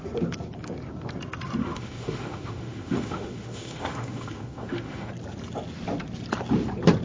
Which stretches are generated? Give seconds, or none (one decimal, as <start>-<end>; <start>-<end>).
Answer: 1.6-5.1